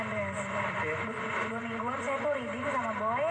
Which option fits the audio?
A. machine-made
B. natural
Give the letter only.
B